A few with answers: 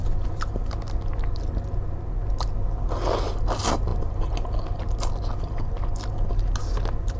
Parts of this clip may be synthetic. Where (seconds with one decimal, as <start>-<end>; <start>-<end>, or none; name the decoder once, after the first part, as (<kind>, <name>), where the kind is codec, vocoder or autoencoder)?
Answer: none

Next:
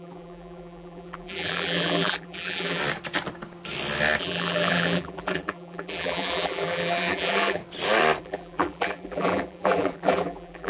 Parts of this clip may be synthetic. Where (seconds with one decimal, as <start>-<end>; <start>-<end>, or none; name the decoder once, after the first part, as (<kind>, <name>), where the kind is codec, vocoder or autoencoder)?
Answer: 0.0-2.8 (vocoder, BigVGAN v2); 4.2-7.6; 8.2-10.7

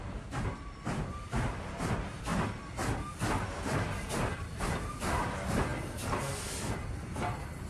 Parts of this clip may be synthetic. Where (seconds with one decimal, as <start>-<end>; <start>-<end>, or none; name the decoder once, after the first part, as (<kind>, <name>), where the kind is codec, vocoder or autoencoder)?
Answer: 0.0-5.7 (vocoder, BigVGAN v2)

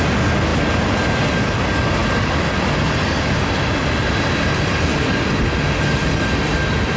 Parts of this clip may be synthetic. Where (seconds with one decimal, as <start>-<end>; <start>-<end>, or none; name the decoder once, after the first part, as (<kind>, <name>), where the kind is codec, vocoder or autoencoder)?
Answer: none

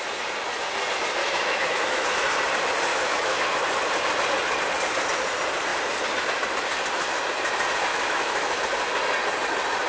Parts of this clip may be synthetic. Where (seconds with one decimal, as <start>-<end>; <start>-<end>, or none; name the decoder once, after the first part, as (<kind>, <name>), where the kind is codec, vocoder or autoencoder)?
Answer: 1.2-2.1 (autoencoder, DAC-VAE); 2.9-3.5; 7.9-8.6

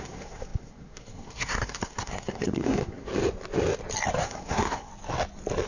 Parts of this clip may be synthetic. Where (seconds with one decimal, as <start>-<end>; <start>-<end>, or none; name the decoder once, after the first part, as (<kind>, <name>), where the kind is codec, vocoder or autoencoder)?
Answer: 0.0-3.1 (codec, SNAC); 4.2-4.9

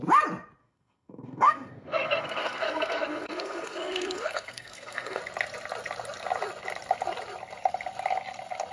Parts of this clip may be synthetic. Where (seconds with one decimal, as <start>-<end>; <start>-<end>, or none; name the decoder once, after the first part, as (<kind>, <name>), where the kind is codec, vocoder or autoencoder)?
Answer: 0.6-5.2 (codec, SNAC)